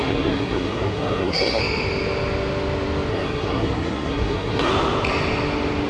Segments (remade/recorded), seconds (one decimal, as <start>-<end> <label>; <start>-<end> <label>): 0.0-1.6 remade; 1.6-3.1 recorded; 3.1-4.7 remade; 4.7-5.9 recorded